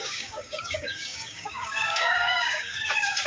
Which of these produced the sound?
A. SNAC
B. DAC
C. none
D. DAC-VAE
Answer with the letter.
B